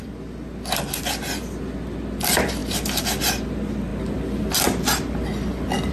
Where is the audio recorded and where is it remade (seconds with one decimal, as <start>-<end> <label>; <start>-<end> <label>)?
0.0-5.9 recorded